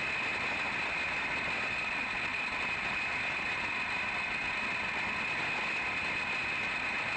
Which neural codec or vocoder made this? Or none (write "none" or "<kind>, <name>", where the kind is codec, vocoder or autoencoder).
none